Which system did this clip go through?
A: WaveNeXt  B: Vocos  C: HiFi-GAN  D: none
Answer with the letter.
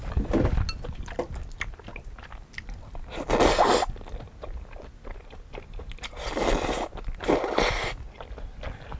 D